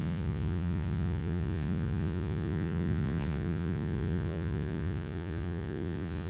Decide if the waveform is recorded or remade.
remade